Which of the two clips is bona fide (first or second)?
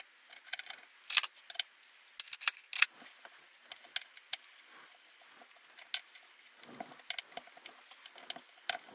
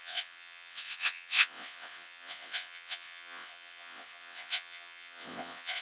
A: first